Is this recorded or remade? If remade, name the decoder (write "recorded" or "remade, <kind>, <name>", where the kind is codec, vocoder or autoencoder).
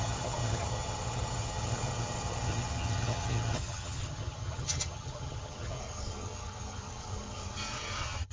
remade, vocoder, HiFi-GAN